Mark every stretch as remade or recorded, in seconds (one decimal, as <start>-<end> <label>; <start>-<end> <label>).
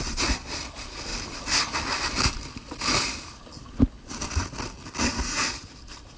0.0-1.1 recorded; 1.1-1.8 remade; 1.8-6.2 recorded